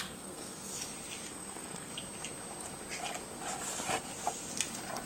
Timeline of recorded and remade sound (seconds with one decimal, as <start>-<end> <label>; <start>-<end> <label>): 0.0-0.7 remade; 0.7-1.3 recorded; 1.3-1.9 remade; 1.9-5.1 recorded